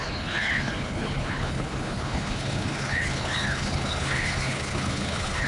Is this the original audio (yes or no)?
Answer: no